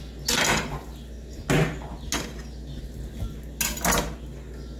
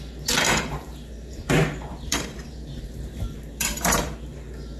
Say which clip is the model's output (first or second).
second